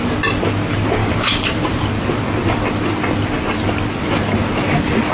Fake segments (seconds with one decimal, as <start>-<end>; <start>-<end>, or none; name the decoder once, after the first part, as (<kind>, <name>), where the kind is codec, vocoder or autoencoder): 1.0-1.9 (vocoder, BigVGAN v2)